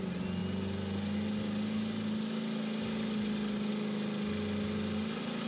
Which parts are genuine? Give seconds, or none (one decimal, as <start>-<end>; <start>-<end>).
0.0-5.5